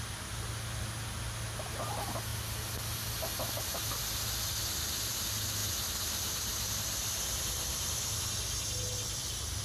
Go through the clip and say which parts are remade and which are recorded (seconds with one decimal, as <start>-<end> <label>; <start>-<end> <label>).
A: 0.0-9.6 recorded